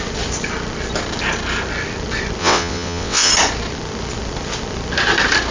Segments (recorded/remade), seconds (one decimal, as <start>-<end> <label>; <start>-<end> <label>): 0.0-2.4 recorded; 2.4-3.3 remade; 3.3-5.5 recorded